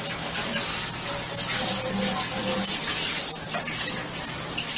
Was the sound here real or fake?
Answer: real